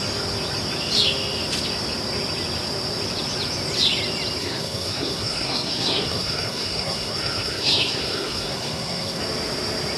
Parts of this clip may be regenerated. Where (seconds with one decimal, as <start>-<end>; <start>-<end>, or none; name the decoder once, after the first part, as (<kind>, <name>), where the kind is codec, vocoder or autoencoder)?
4.4-9.2 (codec, SNAC)